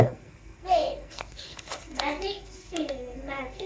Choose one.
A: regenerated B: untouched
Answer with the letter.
A